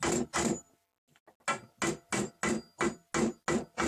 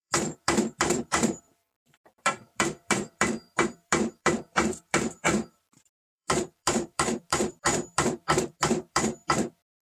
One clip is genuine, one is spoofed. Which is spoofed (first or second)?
second